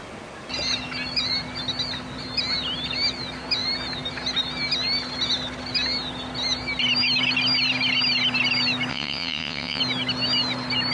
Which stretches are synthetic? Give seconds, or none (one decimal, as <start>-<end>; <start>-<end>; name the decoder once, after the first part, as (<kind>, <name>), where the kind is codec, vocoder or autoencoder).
8.9-9.8 (vocoder, WaveNeXt)